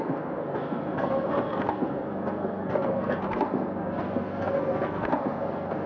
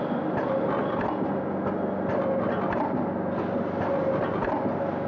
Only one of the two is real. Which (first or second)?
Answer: second